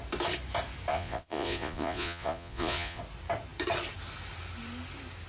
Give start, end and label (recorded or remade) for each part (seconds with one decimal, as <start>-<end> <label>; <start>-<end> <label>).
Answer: 0.0-0.9 recorded; 0.9-3.0 remade; 3.0-5.3 recorded